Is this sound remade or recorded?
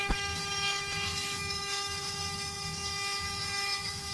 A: remade